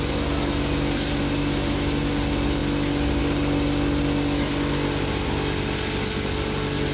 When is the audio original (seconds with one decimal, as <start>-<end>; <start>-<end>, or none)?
0.0-6.9